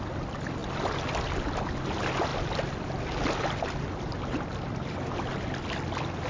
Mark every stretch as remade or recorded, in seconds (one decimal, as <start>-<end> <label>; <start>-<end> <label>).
0.0-6.3 recorded